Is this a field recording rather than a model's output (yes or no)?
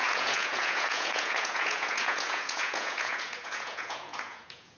no